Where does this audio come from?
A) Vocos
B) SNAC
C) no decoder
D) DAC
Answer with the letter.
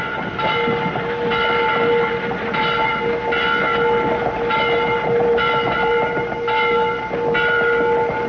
C